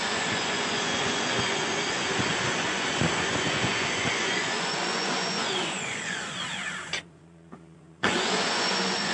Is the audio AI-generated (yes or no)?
yes